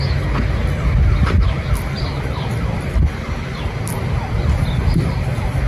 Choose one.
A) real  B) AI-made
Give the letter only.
A